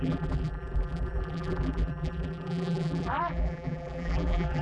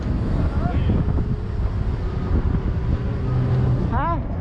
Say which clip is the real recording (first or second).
second